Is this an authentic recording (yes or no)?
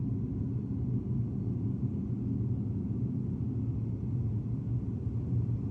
yes